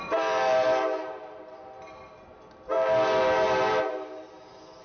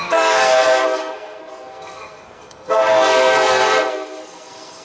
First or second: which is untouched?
first